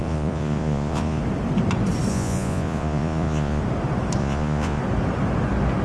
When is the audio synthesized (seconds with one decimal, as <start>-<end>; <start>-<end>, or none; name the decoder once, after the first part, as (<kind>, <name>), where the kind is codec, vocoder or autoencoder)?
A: 0.0-1.2 (vocoder, Vocos); 2.1-3.6; 4.2-4.8